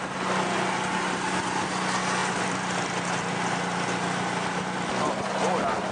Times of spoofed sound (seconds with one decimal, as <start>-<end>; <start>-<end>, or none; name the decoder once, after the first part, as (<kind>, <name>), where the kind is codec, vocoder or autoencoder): none